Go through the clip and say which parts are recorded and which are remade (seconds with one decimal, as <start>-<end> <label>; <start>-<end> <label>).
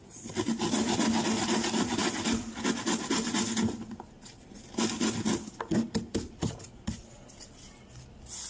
0.0-8.5 recorded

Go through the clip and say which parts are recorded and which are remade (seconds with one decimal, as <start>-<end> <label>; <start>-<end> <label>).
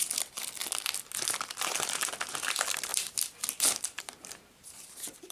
0.0-2.9 recorded; 2.9-5.3 remade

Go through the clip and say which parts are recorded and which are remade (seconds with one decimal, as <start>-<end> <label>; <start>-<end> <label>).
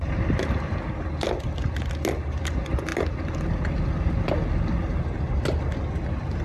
0.0-6.4 recorded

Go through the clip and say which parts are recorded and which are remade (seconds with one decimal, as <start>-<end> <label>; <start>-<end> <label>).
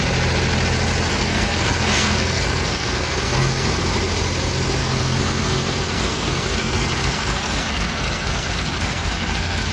0.0-1.1 recorded; 1.1-3.8 remade; 3.8-4.8 recorded; 4.8-9.7 remade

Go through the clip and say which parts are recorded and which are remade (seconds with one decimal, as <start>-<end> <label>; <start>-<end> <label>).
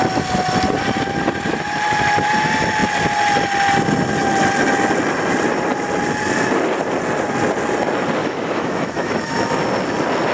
0.0-8.2 recorded; 8.2-9.6 remade; 9.6-10.3 recorded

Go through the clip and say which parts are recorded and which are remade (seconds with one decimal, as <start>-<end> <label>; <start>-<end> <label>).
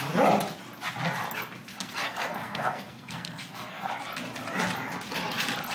0.0-1.7 recorded; 1.7-3.9 remade; 3.9-5.7 recorded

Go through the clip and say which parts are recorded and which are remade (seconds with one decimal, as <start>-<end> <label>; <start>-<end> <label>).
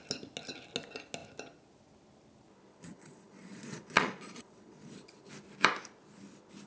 0.0-2.7 recorded; 2.7-5.3 remade; 5.3-6.7 recorded